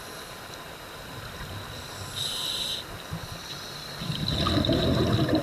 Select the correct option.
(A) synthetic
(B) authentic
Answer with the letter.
B